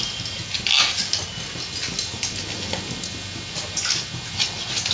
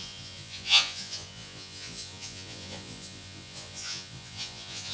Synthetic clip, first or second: second